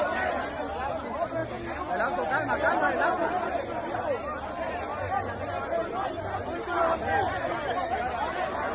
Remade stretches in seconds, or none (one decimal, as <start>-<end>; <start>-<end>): none